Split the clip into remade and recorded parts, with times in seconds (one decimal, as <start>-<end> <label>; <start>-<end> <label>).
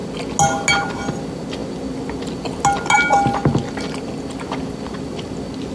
0.0-5.7 recorded